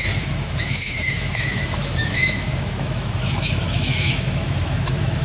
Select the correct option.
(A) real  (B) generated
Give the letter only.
B